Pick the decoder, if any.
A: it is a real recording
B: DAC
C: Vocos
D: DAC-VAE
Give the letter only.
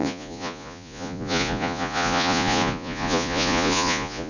C